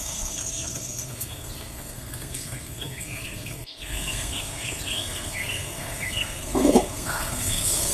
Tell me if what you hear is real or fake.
fake